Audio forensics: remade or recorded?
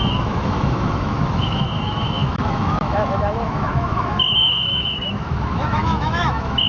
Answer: remade